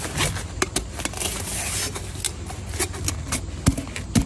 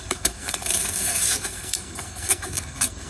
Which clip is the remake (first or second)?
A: second